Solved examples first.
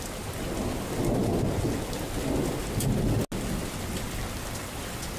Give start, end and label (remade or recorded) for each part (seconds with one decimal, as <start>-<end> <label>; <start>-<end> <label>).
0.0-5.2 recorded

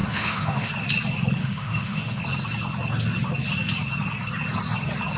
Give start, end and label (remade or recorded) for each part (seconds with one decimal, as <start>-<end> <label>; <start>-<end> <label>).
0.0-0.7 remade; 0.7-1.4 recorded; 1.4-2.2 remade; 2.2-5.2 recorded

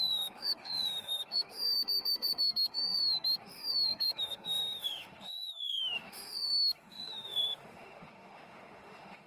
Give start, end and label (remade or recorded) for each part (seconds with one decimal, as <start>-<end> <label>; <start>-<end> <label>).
0.0-9.3 remade